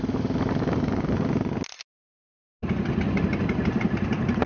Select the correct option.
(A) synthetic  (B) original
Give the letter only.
B